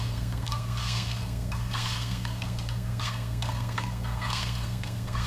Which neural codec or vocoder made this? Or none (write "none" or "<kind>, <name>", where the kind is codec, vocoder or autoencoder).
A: codec, SNAC